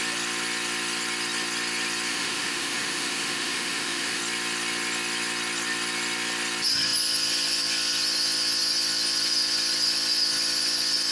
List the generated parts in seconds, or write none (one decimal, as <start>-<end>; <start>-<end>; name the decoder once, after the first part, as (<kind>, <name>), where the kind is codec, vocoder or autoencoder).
2.1-4.2 (autoencoder, DAC-VAE)